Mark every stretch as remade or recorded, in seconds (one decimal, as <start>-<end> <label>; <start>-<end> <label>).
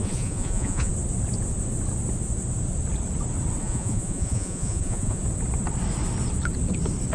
0.0-0.9 remade; 0.9-3.6 recorded; 3.6-5.2 remade; 5.2-7.1 recorded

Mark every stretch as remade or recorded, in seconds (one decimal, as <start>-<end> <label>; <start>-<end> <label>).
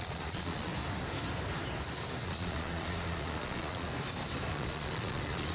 0.0-0.7 remade; 0.7-2.2 recorded; 2.2-3.9 remade; 3.9-4.5 recorded; 4.5-5.5 remade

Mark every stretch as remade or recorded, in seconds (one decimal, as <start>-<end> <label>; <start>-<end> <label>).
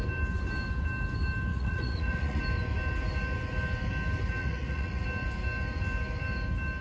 0.0-1.5 recorded; 1.5-2.4 remade; 2.4-4.4 recorded; 4.4-5.0 remade; 5.0-6.8 recorded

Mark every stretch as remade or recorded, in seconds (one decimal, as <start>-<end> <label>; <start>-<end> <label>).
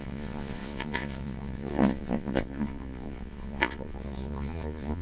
0.0-5.0 remade